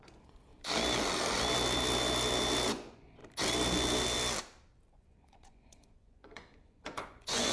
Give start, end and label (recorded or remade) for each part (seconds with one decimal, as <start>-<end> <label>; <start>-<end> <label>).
0.0-0.5 remade; 0.5-2.7 recorded; 2.7-3.2 remade; 3.2-4.9 recorded; 4.9-7.5 remade